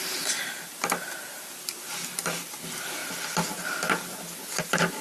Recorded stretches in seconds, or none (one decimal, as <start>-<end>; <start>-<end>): 3.0-4.6